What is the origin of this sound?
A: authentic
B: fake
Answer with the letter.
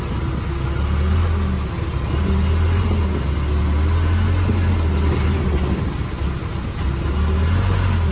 A